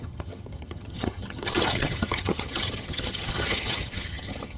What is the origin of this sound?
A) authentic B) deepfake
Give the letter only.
B